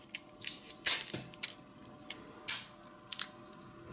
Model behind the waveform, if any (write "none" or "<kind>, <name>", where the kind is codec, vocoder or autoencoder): none